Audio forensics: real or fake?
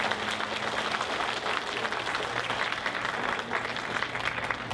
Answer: real